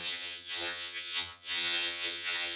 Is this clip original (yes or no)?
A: no